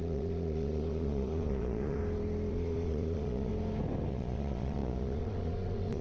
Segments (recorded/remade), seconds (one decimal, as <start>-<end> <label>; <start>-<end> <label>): 0.0-2.0 remade; 2.0-2.5 recorded; 2.5-3.5 remade; 3.5-4.1 recorded; 4.1-6.0 remade